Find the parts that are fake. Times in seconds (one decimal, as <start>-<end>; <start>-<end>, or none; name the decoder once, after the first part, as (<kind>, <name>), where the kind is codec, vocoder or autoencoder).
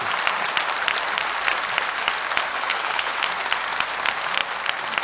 2.5-3.2 (codec, HILCodec)